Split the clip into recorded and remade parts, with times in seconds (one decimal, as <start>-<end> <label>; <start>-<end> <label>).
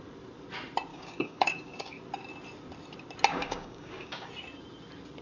0.0-0.9 recorded; 0.9-1.9 remade; 1.9-3.3 recorded; 3.3-4.3 remade; 4.3-5.2 recorded